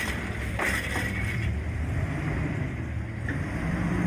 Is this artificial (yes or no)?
yes